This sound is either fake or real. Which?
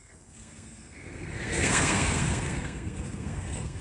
fake